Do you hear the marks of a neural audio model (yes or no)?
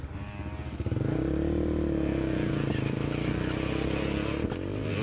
no